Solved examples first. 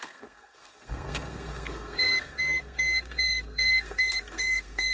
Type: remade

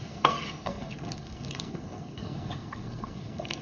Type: remade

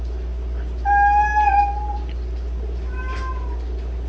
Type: recorded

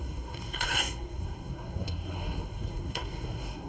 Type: remade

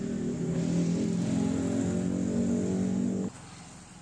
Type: recorded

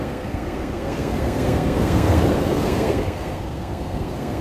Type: remade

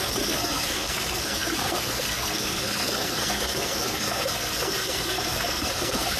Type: remade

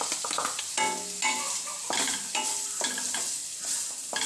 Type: recorded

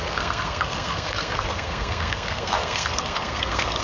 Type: remade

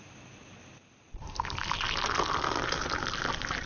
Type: recorded